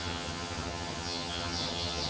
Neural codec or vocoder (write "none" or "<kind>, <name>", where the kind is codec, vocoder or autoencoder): vocoder, HiFi-GAN